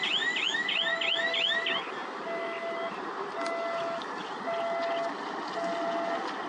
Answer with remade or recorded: recorded